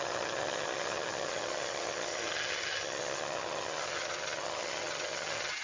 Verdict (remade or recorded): remade